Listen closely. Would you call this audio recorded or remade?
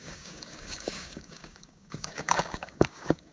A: remade